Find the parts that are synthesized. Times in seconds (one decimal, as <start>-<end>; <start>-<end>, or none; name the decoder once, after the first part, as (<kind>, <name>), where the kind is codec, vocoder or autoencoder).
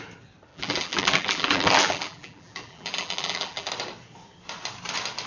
0.5-3.7 (vocoder, BigVGAN v2)